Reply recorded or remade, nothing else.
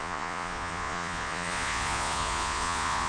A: remade